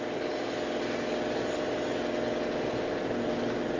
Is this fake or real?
real